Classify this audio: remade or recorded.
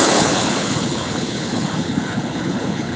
remade